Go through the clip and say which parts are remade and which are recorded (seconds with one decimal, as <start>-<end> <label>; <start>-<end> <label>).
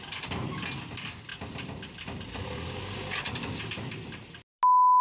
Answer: 0.0-5.0 recorded